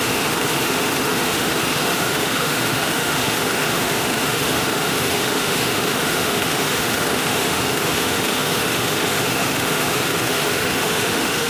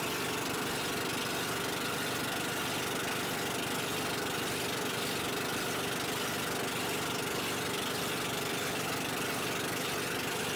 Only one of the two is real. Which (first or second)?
second